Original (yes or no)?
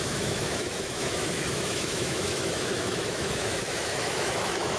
no